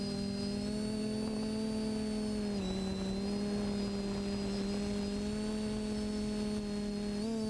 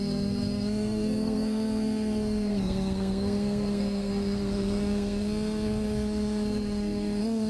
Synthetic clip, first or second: second